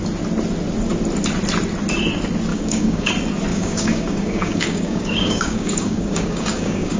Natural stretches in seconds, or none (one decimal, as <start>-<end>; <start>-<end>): 0.0-2.5; 3.1-3.5